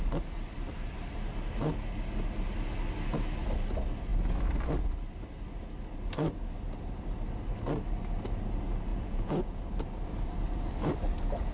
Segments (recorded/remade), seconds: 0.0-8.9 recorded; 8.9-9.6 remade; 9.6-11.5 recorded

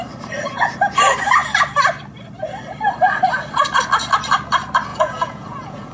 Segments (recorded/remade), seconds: 0.0-4.9 recorded; 4.9-5.9 remade

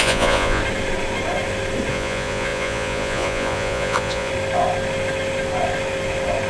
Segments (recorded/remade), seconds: 0.0-0.6 remade; 0.6-1.9 recorded; 1.9-4.3 remade; 4.3-6.5 recorded

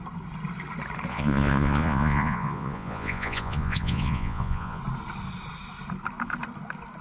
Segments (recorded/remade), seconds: 0.0-1.1 recorded; 1.1-4.8 remade; 4.8-7.0 recorded

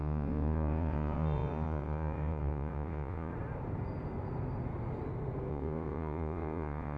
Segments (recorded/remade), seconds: 0.0-3.3 remade; 3.3-5.5 recorded; 5.5-7.0 remade

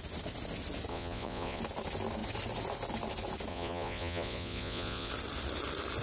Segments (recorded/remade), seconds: 0.0-0.9 recorded; 0.9-1.6 remade; 1.6-3.5 recorded; 3.5-5.1 remade; 5.1-6.0 recorded

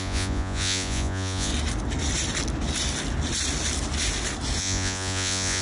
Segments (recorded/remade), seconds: 0.0-1.5 remade; 1.5-4.6 recorded; 4.6-5.6 remade